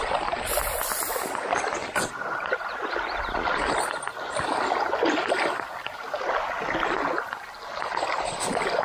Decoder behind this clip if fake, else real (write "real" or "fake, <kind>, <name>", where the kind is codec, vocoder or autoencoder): real